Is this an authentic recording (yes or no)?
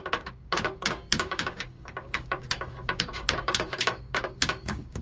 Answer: no